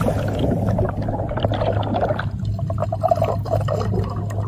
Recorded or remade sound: recorded